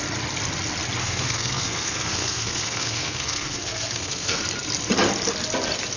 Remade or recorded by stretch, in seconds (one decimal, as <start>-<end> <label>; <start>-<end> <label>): 0.0-1.0 recorded; 1.0-4.4 remade; 4.4-6.0 recorded